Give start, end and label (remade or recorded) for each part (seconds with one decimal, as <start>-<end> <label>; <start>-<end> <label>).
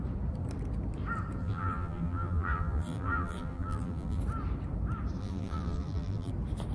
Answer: 0.0-1.4 recorded; 1.4-4.2 remade; 4.2-5.2 recorded; 5.2-6.3 remade; 6.3-6.7 recorded